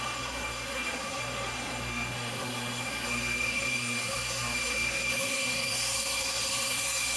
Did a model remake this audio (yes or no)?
yes